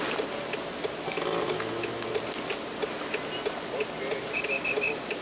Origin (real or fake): real